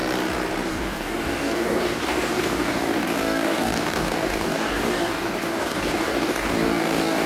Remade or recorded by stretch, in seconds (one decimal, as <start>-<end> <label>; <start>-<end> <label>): 0.0-0.7 recorded; 0.7-7.3 remade

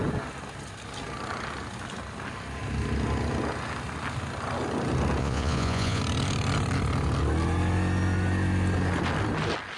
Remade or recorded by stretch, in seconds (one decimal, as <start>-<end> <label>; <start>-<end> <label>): 0.0-5.2 recorded; 5.2-6.0 remade; 6.0-9.8 recorded

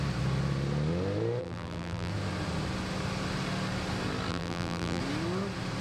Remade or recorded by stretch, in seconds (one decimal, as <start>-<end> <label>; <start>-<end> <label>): 0.0-1.4 recorded; 1.4-2.1 remade; 2.1-4.3 recorded; 4.3-5.0 remade; 5.0-5.8 recorded

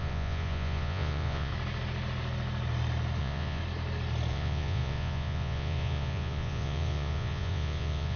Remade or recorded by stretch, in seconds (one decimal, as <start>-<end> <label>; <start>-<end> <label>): 0.0-1.5 remade; 1.5-3.2 recorded; 3.2-3.6 remade; 3.6-4.3 recorded; 4.3-8.2 remade

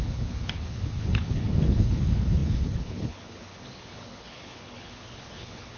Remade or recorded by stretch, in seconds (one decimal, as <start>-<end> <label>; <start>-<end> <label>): 0.0-5.8 remade